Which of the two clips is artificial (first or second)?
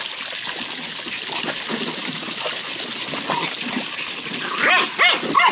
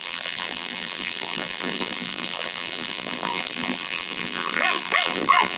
second